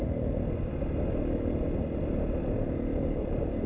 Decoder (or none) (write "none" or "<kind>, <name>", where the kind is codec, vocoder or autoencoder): none